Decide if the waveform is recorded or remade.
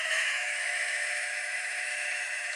remade